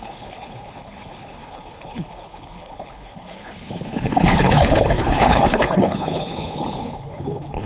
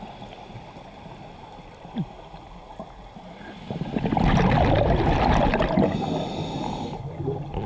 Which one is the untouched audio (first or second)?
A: second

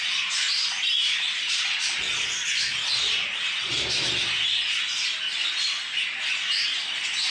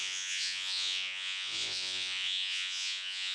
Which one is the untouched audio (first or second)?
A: first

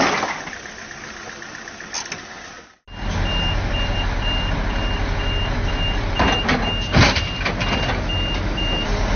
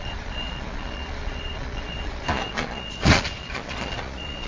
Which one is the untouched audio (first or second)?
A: first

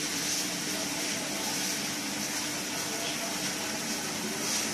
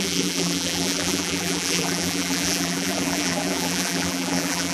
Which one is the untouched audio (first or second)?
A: first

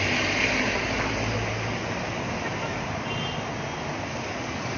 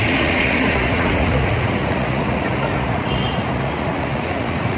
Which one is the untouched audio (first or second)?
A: first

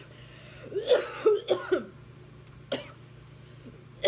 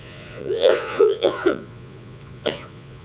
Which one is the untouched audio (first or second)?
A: first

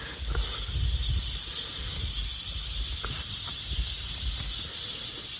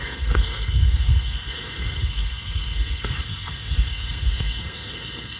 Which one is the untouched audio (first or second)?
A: first